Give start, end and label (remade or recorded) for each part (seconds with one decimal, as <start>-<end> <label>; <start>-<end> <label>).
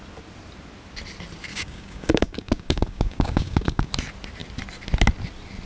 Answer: 0.0-1.5 recorded; 1.5-3.9 remade; 3.9-5.7 recorded